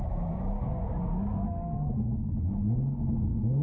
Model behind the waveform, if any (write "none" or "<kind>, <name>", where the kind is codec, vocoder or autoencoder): none